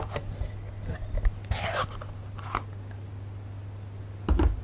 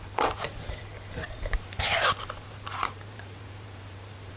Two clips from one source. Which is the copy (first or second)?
second